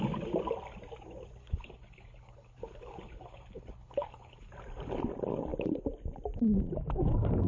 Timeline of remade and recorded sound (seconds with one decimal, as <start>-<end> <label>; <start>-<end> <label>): 0.0-1.4 recorded; 1.4-4.5 remade; 4.5-7.5 recorded